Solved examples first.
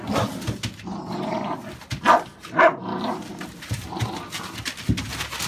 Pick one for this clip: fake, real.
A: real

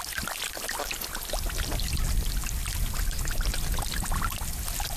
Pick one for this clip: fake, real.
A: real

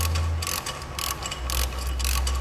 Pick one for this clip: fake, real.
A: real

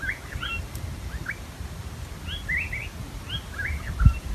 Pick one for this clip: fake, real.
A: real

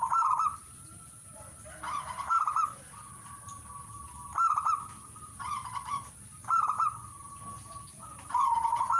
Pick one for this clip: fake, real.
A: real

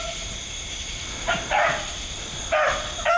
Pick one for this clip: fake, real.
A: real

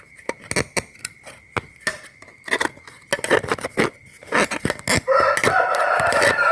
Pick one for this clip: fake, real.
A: real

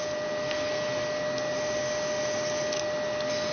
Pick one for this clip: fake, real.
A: real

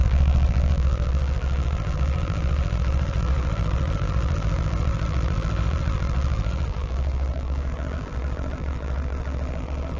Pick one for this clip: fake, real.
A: fake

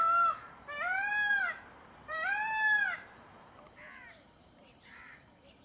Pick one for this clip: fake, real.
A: fake